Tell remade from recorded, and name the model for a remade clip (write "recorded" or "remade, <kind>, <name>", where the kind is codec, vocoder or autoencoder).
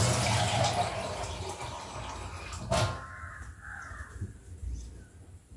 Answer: recorded